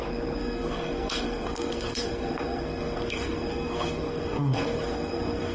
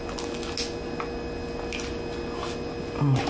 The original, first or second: second